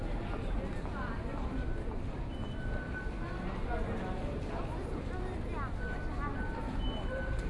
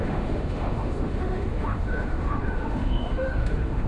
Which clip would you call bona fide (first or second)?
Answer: first